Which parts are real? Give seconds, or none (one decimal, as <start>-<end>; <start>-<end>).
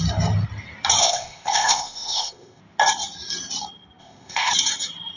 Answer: 0.0-1.0; 2.6-4.0; 4.5-5.2